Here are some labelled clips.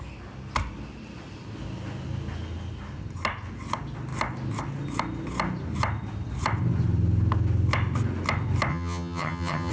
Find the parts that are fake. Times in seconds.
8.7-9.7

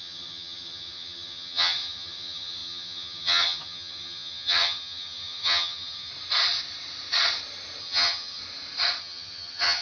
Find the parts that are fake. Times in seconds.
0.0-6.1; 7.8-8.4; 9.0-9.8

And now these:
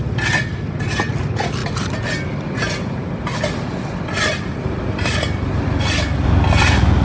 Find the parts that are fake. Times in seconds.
none

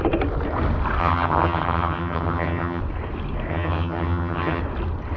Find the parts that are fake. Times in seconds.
1.0-2.8; 3.5-4.6